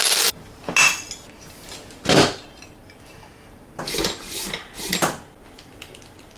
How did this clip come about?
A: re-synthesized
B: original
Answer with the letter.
B